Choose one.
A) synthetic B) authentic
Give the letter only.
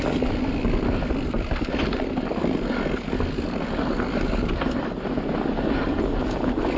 B